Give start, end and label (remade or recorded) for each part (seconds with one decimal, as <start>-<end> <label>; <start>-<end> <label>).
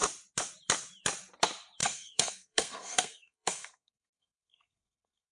0.0-1.8 recorded; 1.8-5.3 remade